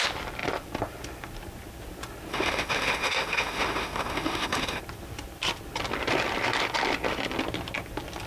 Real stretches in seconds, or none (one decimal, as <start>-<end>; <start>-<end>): 0.0-2.3; 4.8-8.3